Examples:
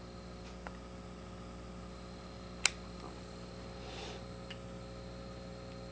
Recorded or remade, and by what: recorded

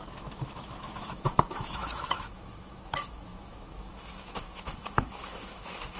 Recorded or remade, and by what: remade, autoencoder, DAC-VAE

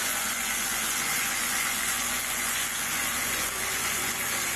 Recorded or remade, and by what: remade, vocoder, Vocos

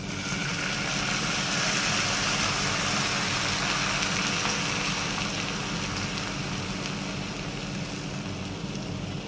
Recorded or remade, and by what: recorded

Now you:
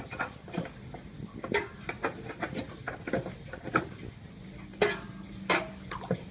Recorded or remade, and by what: recorded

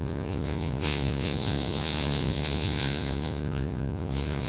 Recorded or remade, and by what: remade, vocoder, Vocos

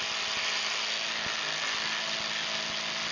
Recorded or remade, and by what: recorded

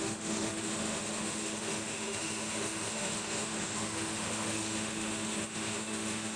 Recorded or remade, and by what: remade, autoencoder, DAC-VAE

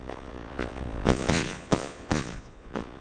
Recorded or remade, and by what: remade, vocoder, Vocos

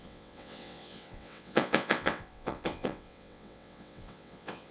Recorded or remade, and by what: remade, vocoder, WaveNeXt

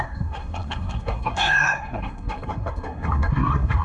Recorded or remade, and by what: remade, codec, SNAC